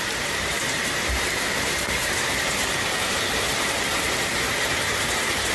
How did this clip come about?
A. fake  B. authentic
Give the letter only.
A